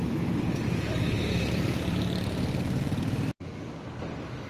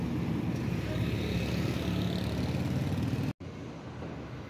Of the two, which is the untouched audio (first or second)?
second